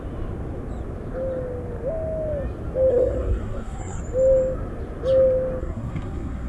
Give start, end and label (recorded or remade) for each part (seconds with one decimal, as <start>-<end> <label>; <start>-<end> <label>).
0.0-2.9 recorded; 2.9-4.0 remade; 4.0-5.6 recorded; 5.6-6.5 remade